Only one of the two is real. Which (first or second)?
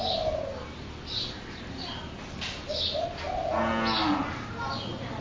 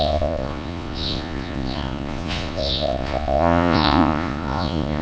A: first